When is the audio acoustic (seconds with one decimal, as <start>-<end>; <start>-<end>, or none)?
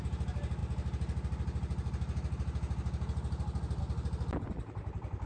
0.0-5.3